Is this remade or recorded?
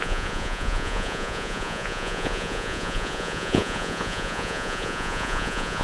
remade